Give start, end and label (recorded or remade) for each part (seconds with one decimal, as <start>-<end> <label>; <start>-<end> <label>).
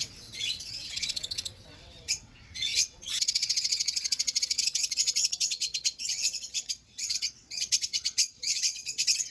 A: 0.0-9.3 remade